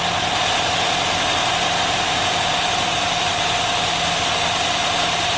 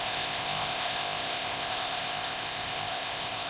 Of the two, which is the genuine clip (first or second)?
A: first